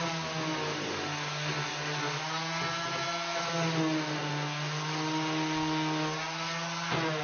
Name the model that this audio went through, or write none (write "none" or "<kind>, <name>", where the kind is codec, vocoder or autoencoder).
none